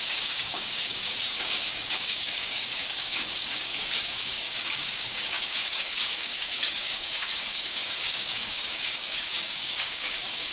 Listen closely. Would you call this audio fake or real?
fake